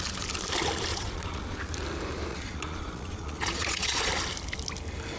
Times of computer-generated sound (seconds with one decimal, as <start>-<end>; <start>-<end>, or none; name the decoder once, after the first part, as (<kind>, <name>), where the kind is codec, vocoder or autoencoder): 0.9-1.7 (vocoder, Vocos); 2.3-4.1